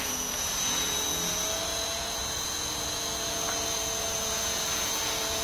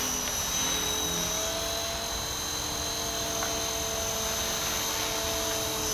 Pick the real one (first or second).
second